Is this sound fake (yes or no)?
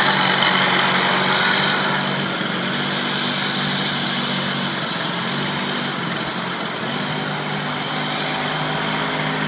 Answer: no